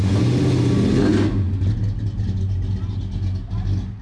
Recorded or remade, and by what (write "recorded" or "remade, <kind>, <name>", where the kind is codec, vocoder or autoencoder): recorded